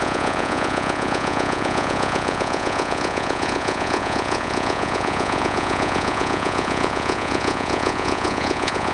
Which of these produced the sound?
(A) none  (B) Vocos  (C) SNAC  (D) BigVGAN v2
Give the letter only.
B